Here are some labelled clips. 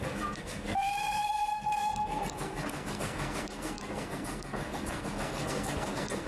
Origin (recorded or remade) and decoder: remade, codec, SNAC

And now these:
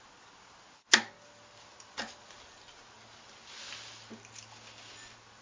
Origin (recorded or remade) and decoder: recorded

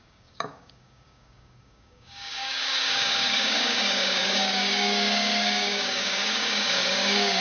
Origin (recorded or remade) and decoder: remade, codec, DAC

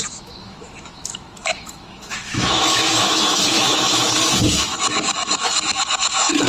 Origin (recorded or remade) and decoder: remade, autoencoder, DAC-VAE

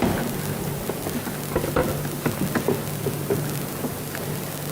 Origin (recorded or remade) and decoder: recorded